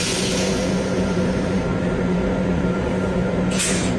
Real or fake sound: fake